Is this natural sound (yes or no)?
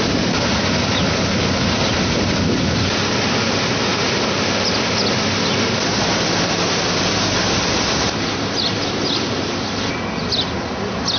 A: yes